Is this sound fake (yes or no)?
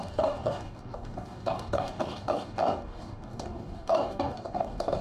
yes